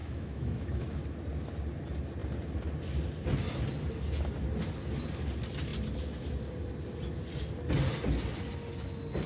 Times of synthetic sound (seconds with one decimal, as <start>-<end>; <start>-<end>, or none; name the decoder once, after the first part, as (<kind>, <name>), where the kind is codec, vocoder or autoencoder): 0.0-1.0 (autoencoder, DAC-VAE)